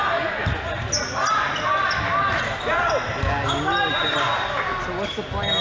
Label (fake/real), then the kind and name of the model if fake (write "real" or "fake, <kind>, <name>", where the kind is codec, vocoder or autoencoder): real